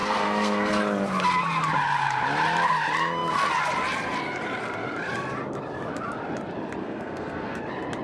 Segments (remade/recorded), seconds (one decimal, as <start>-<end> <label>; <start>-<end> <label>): 0.0-0.8 remade; 0.8-6.8 recorded; 6.8-7.6 remade; 7.6-8.0 recorded